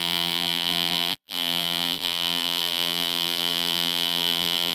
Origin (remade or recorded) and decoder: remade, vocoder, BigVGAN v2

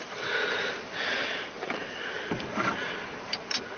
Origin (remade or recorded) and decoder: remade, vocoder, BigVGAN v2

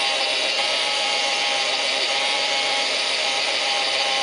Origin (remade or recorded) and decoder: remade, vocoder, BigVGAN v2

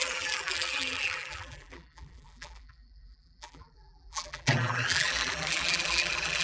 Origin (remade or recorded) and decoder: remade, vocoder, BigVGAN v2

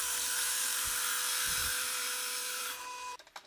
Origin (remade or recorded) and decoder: remade, vocoder, BigVGAN v2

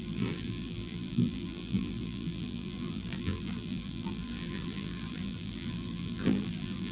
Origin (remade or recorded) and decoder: remade, vocoder, BigVGAN v2